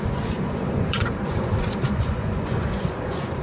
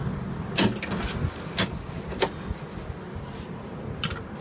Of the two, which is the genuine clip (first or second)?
second